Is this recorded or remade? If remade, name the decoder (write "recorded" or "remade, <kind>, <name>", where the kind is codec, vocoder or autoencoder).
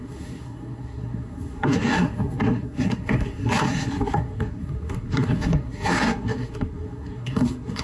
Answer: remade, codec, SNAC